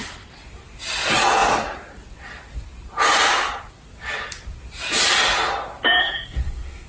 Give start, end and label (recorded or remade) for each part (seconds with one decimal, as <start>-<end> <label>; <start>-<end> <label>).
0.0-6.0 recorded; 6.0-6.9 remade